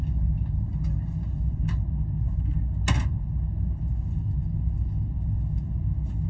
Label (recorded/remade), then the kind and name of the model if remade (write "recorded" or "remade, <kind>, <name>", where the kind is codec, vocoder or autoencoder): recorded